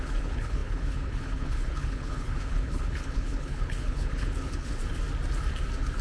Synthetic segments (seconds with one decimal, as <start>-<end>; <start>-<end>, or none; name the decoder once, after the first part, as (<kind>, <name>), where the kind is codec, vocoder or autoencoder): 0.0-4.8 (codec, HILCodec)